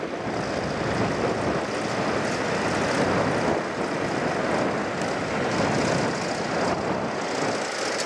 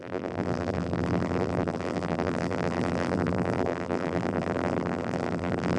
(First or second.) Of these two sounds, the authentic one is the first